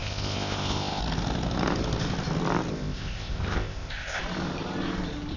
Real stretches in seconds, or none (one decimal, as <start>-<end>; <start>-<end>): 1.0-2.7; 4.2-5.4